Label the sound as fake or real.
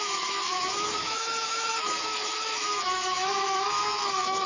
fake